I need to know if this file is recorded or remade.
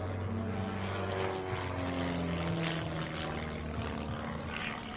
recorded